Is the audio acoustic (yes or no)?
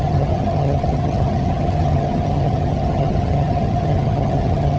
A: no